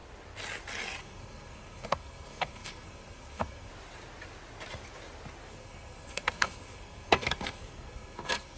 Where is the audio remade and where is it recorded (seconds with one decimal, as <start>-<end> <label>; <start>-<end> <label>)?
0.0-1.0 recorded; 1.0-3.7 remade; 3.7-5.5 recorded; 5.5-8.6 remade